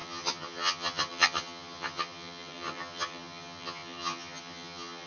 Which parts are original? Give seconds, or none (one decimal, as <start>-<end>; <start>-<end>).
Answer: none